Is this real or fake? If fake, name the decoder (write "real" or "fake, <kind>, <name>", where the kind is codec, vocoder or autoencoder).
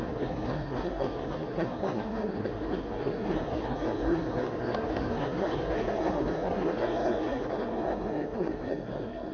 fake, codec, SNAC